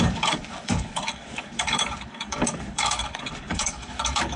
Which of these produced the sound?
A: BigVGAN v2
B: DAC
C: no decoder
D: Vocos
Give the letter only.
B